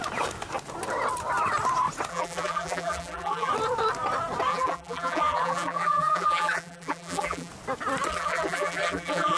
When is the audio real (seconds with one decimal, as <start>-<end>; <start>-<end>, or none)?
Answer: 0.0-2.1; 3.5-4.5; 7.5-8.1